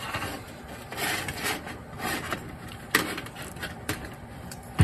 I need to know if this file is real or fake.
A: fake